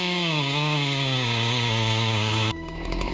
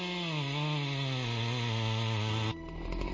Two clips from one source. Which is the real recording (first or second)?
second